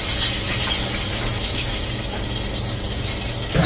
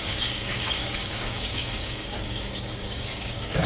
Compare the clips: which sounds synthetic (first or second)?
second